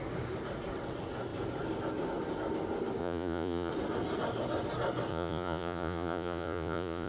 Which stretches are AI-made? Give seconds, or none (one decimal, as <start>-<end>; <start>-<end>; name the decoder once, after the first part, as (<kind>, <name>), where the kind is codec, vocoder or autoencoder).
3.0-3.7 (vocoder, Vocos); 5.1-7.1